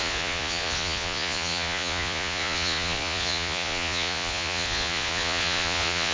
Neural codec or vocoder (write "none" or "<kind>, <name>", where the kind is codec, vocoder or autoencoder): vocoder, Vocos